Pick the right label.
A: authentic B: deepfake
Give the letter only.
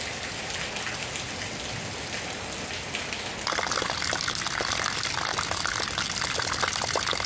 A